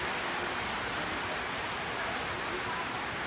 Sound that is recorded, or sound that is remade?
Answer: recorded